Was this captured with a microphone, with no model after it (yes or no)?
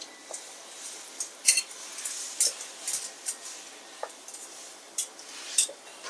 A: no